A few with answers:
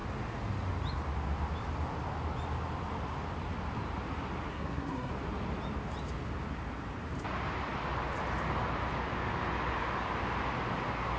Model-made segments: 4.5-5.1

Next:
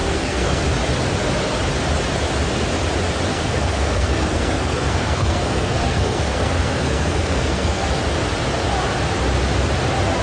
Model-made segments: 0.0-0.6; 3.3-7.9

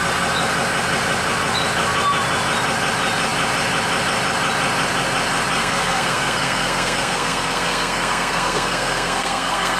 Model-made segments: 5.6-9.8

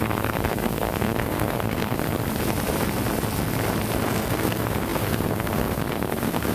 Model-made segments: 0.0-2.0; 4.1-6.5

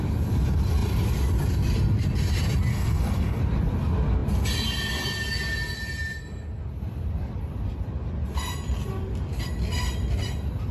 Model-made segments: 2.7-3.4

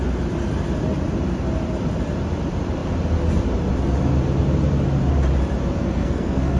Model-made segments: 5.8-6.6